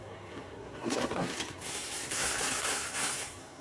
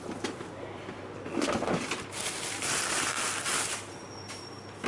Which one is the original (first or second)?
second